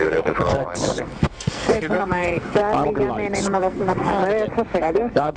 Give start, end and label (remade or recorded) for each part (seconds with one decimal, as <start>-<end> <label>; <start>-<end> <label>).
0.0-2.6 remade; 2.6-3.4 recorded; 3.4-4.2 remade; 4.2-4.8 recorded; 4.8-5.4 remade